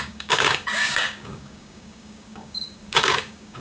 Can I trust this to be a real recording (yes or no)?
no